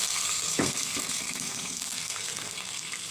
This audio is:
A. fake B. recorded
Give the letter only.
A